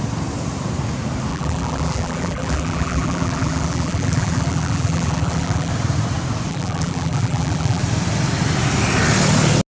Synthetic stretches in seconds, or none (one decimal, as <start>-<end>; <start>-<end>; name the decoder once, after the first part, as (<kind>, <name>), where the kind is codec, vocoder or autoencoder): 1.3-5.7 (vocoder, BigVGAN v2); 6.5-7.8